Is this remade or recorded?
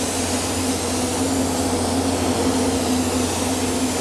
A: recorded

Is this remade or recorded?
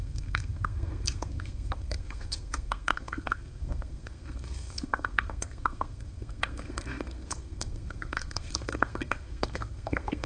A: remade